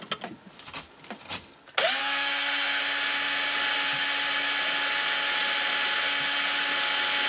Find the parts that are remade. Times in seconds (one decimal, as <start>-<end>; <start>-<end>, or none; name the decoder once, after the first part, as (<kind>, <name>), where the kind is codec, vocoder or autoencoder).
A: 2.0-2.8 (codec, SNAC)